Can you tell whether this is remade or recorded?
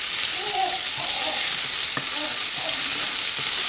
recorded